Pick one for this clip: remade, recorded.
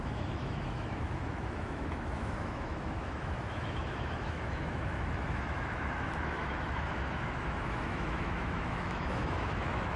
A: remade